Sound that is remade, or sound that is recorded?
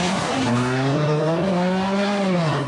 remade